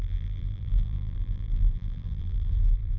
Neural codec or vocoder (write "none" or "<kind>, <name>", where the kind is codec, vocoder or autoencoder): vocoder, BigVGAN v2